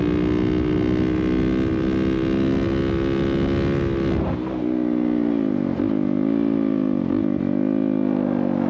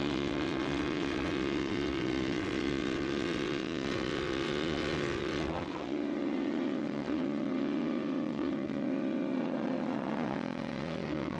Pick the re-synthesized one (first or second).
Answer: second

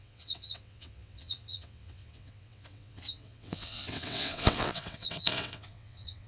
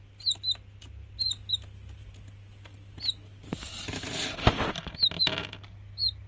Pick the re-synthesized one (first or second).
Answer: first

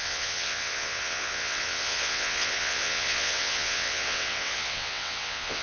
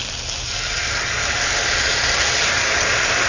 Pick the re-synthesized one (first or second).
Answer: first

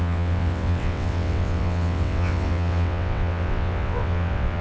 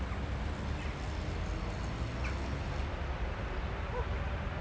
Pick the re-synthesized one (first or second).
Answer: first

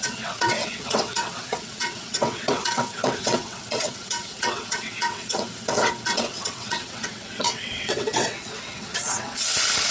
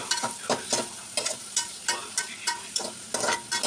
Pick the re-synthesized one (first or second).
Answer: first